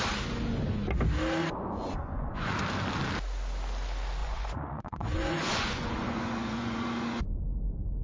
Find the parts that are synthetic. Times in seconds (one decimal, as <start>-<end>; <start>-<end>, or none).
1.4-2.5; 4.2-7.4